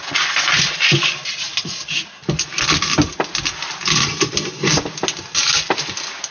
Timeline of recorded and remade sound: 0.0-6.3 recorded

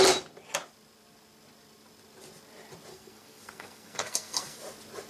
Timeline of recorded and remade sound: 0.0-2.9 recorded; 2.9-4.6 remade; 4.6-5.1 recorded

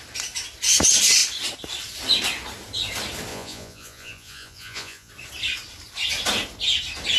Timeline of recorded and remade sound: 0.0-3.3 recorded; 3.3-5.1 remade; 5.1-7.2 recorded

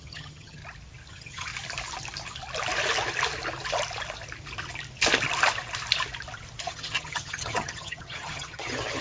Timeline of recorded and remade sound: 0.0-0.6 remade; 0.6-1.1 recorded; 1.1-1.5 remade; 1.5-6.6 recorded; 6.6-9.0 remade

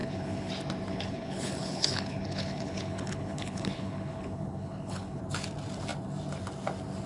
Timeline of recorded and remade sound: 0.0-0.5 remade; 0.5-0.9 recorded; 0.9-5.2 remade; 5.2-7.1 recorded